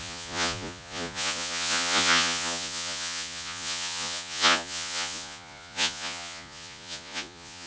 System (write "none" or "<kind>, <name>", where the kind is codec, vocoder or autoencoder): vocoder, Vocos